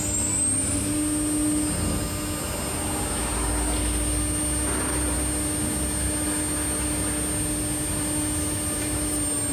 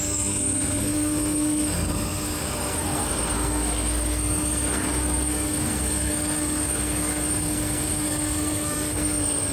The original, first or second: first